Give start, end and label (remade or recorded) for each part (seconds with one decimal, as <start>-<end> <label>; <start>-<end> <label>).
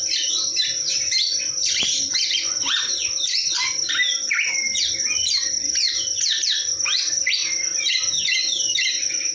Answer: 0.0-9.3 recorded